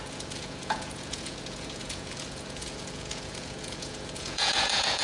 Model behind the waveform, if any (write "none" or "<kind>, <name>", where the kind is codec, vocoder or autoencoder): vocoder, Vocos